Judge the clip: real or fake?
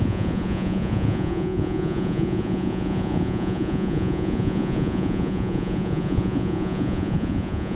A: fake